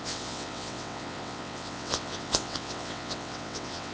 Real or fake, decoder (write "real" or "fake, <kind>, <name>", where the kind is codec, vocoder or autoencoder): fake, vocoder, WaveNeXt